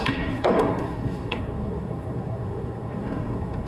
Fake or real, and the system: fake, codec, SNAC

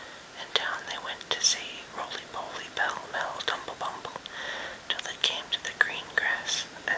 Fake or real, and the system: real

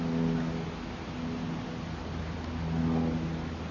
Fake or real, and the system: real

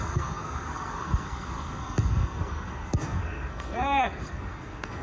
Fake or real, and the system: fake, codec, SNAC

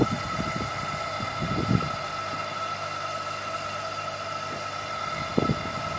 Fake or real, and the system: real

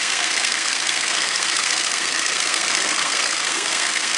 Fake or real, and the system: fake, codec, SNAC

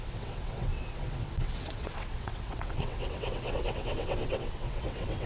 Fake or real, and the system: fake, vocoder, WaveNeXt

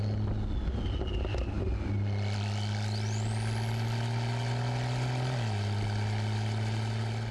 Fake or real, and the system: real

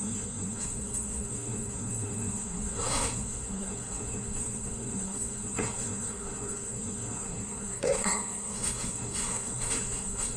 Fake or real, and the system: fake, codec, SNAC